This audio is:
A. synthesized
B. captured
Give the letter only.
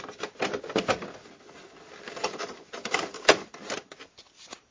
B